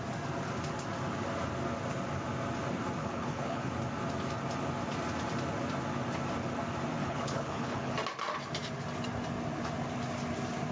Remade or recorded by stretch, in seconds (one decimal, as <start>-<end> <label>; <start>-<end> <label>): 0.0-3.0 recorded; 3.0-3.7 remade; 3.7-7.0 recorded; 7.0-7.9 remade; 7.9-10.7 recorded

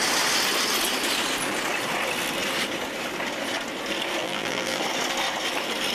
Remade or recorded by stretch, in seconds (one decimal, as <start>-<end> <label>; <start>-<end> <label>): 0.0-4.2 recorded; 4.2-4.8 remade; 4.8-5.9 recorded